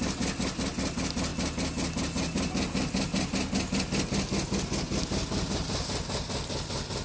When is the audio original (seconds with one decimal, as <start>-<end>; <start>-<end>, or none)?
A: 0.0-7.0